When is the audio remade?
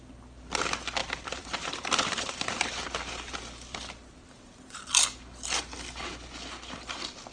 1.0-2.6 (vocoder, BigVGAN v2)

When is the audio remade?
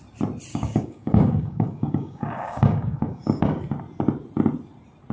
0.5-3.6 (codec, DAC)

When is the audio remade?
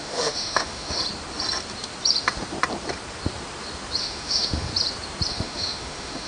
0.0-1.0 (autoencoder, DAC-VAE); 4.0-4.7; 5.3-6.3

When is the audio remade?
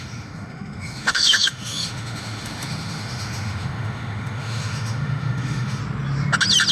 0.0-5.8 (autoencoder, DAC-VAE)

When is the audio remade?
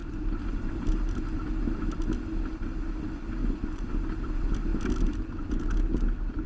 3.4-3.9 (vocoder, Vocos)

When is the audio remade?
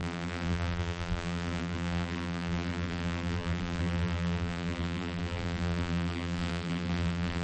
0.0-7.4 (vocoder, BigVGAN v2)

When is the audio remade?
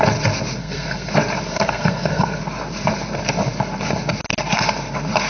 0.6-1.1 (codec, SNAC); 1.5-2.4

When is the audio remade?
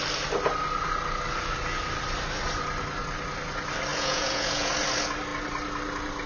3.9-4.7 (vocoder, Vocos)